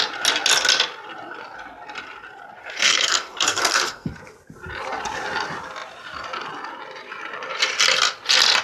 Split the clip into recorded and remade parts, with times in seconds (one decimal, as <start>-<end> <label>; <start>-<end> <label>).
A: 0.0-2.6 recorded; 2.6-4.1 remade; 4.1-8.6 recorded